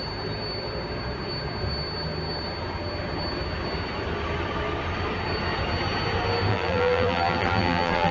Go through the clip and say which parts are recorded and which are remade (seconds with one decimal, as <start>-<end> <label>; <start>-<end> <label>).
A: 0.0-6.5 recorded; 6.5-8.1 remade